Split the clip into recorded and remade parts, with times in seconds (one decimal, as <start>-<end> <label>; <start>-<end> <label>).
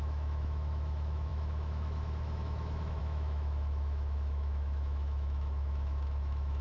0.0-6.6 remade